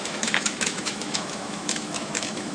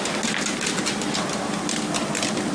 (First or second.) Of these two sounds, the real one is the second